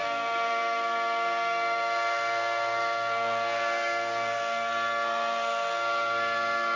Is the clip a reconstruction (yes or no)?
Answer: yes